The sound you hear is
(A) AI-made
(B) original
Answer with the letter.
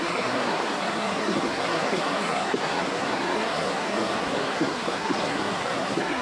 A